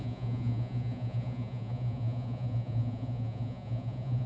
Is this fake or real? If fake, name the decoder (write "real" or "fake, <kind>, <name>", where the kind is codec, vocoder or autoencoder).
fake, vocoder, Vocos